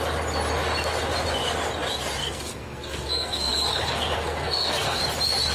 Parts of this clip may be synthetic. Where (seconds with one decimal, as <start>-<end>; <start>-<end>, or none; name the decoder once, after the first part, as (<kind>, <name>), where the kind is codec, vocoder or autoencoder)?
2.2-5.0 (codec, SNAC)